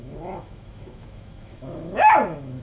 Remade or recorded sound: remade